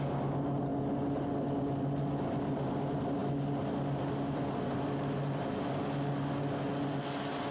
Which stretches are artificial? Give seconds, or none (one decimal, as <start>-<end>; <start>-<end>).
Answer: none